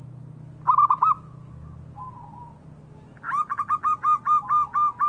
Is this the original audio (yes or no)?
yes